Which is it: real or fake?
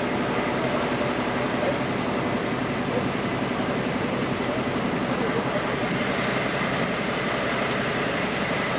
real